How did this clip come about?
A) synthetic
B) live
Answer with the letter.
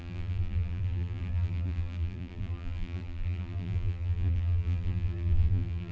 A